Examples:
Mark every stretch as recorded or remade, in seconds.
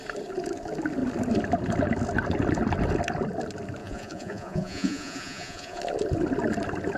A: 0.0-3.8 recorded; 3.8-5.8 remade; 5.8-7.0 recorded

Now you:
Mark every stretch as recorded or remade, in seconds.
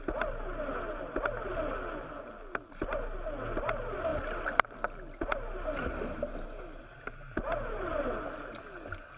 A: 0.0-9.2 recorded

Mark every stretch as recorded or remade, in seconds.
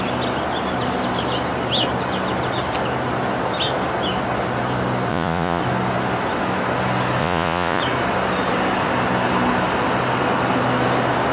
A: 0.0-5.1 recorded; 5.1-5.6 remade; 5.6-7.2 recorded; 7.2-7.8 remade; 7.8-11.3 recorded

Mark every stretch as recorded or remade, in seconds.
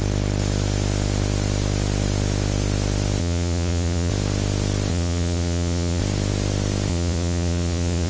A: 0.0-3.2 recorded; 3.2-4.1 remade; 4.1-4.9 recorded; 4.9-6.0 remade; 6.0-6.9 recorded; 6.9-8.1 remade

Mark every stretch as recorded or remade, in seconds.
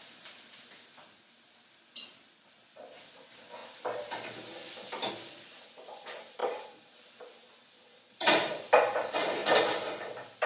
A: 0.0-10.5 recorded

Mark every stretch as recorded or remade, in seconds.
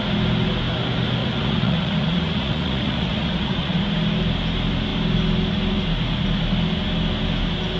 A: 0.0-1.2 recorded; 1.2-3.8 remade; 3.8-7.8 recorded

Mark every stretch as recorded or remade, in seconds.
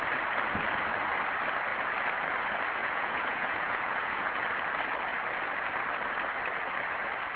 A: 0.0-2.8 recorded; 2.8-4.4 remade; 4.4-7.4 recorded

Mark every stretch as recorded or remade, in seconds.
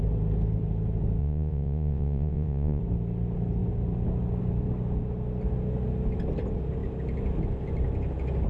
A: 0.0-1.2 recorded; 1.2-2.8 remade; 2.8-8.5 recorded